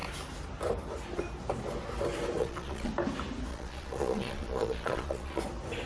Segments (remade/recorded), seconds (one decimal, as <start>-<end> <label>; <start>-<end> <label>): 0.0-2.4 recorded; 2.4-2.9 remade; 2.9-3.5 recorded; 3.5-5.4 remade; 5.4-5.9 recorded